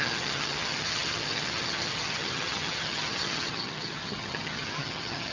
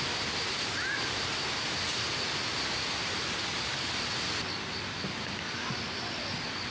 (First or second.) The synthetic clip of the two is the first